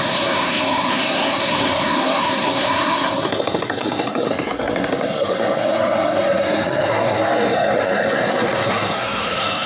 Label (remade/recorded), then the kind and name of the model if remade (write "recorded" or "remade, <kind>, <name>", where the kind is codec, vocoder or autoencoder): remade, codec, SNAC